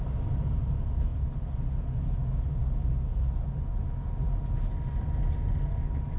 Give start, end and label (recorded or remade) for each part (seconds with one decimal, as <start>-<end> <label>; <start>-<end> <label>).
0.0-6.2 recorded